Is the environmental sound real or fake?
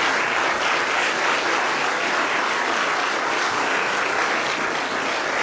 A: real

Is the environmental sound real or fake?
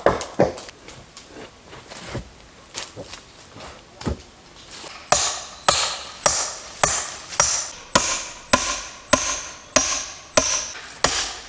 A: real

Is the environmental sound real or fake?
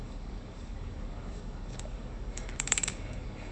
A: fake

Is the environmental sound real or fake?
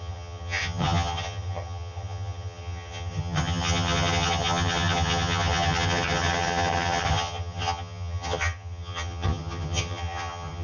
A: fake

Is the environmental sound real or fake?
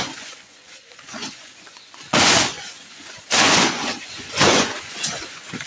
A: fake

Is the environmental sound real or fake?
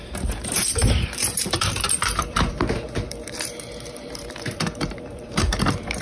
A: fake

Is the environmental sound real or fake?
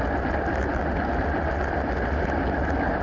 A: real